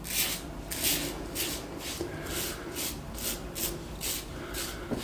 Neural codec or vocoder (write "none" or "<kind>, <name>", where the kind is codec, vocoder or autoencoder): none